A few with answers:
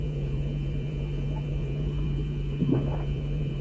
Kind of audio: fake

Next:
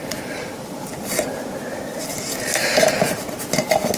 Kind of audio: real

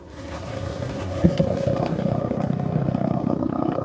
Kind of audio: fake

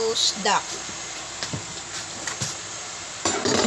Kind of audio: fake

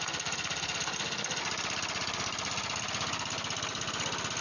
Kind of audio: real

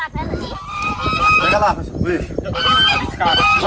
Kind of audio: real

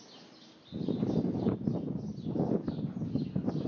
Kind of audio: real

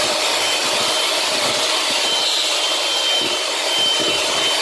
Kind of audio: real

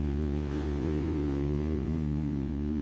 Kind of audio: fake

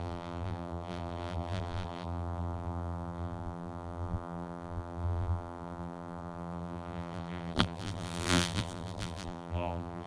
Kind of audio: fake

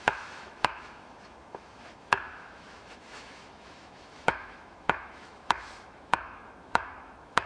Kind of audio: fake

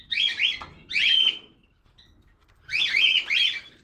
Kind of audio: real